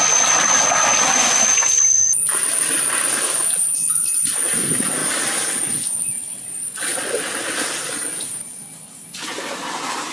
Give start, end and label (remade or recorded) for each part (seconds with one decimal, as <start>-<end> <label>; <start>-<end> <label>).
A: 0.0-6.7 recorded; 6.7-7.2 remade; 7.2-10.1 recorded